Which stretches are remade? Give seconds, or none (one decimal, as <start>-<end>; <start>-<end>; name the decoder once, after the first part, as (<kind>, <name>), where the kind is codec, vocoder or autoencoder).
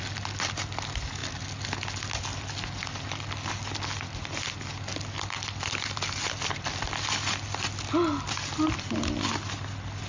none